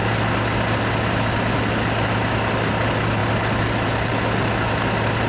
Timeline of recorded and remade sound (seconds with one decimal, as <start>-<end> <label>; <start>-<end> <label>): 0.0-5.3 recorded